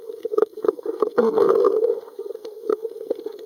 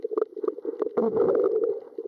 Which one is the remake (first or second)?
first